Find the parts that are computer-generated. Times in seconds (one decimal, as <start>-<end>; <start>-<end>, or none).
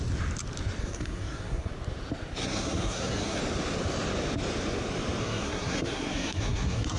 0.8-1.7; 2.4-3.4; 5.2-7.0